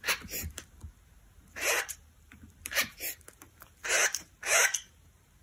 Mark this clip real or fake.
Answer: fake